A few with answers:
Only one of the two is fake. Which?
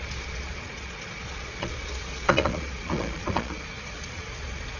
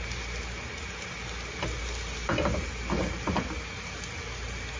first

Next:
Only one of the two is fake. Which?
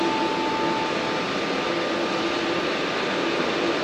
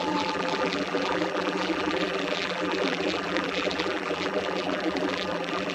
second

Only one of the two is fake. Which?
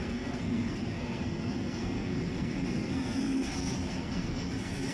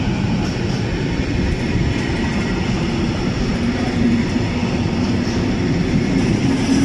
first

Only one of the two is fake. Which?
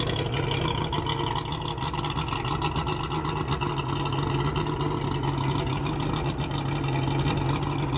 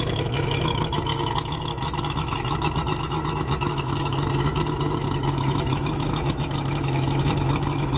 second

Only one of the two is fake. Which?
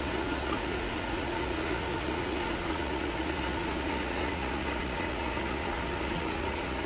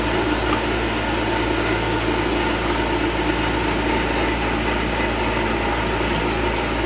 first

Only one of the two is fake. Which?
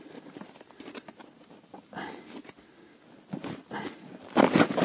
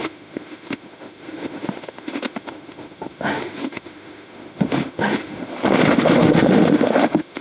second